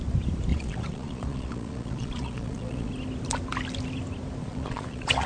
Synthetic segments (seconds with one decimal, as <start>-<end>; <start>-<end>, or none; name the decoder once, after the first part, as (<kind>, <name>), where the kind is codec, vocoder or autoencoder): 0.5-2.9 (vocoder, Vocos); 4.4-5.3